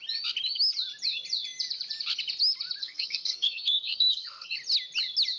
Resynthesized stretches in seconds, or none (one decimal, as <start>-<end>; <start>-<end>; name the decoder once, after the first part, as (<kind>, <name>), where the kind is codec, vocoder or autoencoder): 2.8-4.5 (codec, SNAC)